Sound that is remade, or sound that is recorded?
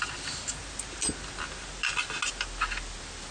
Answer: recorded